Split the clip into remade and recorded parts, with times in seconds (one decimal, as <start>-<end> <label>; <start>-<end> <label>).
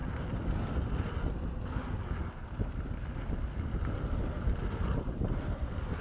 0.0-6.0 recorded